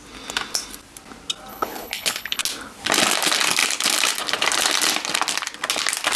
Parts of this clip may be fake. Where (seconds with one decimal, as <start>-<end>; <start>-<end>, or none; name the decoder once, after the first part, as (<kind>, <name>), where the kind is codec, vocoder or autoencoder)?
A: 1.5-2.4 (codec, HILCodec)